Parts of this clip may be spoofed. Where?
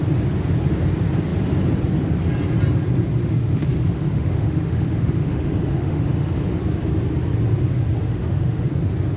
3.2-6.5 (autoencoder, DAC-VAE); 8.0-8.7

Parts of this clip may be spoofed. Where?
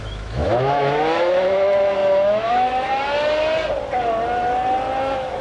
0.0-2.9 (autoencoder, DAC-VAE); 5.0-5.4